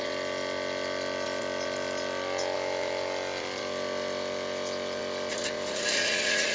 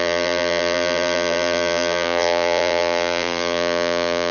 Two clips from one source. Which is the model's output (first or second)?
second